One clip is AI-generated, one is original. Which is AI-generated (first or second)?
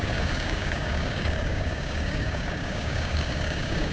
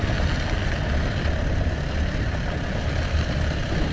first